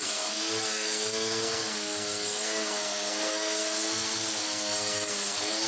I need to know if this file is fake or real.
fake